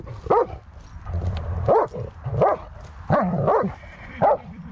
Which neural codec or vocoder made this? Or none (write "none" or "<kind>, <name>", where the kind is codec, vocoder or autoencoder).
vocoder, BigVGAN v2